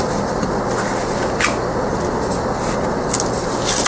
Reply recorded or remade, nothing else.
recorded